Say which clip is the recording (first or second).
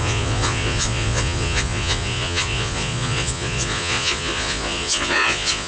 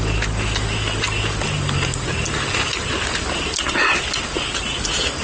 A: second